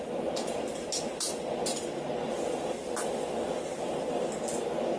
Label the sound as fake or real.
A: real